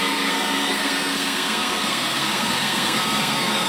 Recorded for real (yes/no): no